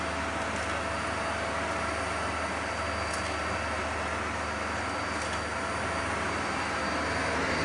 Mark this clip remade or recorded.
recorded